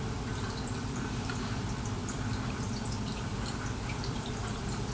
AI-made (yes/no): yes